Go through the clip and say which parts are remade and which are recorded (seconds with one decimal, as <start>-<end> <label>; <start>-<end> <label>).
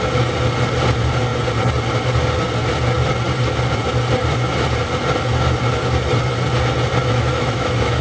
0.0-7.0 recorded; 7.0-8.0 remade